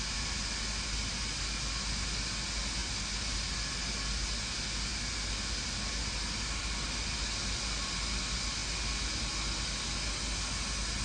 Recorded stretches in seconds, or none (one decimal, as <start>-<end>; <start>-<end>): 0.0-11.0